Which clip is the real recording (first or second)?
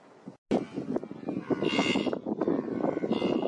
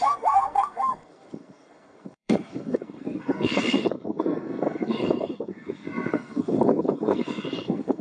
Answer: first